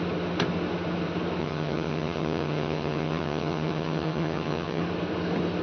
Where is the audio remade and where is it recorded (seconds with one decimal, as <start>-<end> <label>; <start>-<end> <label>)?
0.0-1.4 recorded; 1.4-4.8 remade; 4.8-5.6 recorded